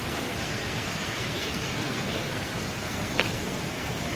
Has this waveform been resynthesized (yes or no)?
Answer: yes